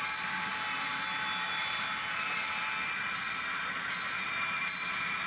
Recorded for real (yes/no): no